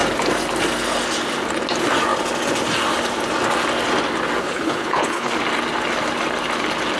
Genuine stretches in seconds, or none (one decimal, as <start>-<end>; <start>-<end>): 0.0-4.4; 5.3-7.0